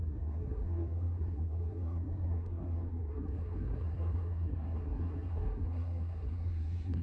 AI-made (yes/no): yes